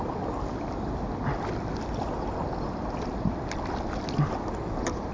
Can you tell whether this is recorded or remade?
recorded